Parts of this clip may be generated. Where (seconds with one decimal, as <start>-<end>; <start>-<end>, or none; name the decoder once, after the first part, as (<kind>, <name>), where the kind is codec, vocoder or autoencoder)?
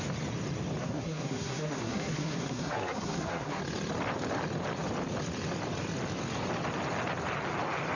0.8-3.6 (codec, SNAC)